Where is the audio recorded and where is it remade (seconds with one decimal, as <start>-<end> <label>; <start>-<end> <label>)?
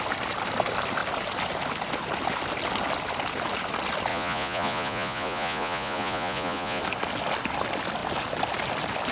0.0-4.1 recorded; 4.1-6.8 remade; 6.8-9.1 recorded